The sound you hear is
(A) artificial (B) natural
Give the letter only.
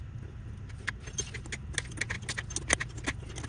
B